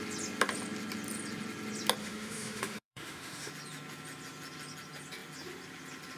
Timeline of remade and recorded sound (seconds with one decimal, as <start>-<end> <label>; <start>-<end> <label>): 0.0-2.0 recorded; 2.0-3.5 remade; 3.5-6.2 recorded